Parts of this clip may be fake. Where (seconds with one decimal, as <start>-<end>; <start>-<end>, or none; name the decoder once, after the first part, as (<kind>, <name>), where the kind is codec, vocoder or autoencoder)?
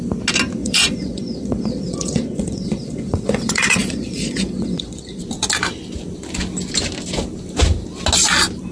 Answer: 0.6-5.2 (vocoder, Vocos)